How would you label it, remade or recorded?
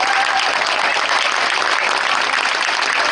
recorded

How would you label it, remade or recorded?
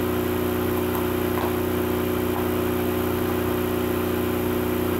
recorded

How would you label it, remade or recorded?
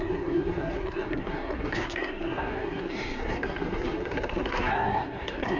remade